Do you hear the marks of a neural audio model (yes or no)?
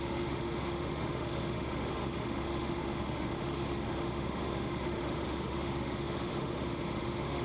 yes